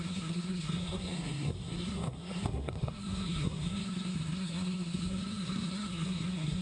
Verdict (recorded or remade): remade